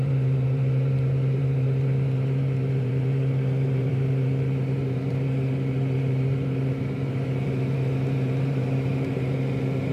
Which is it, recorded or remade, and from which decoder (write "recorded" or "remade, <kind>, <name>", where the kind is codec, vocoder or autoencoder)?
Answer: remade, vocoder, BigVGAN v2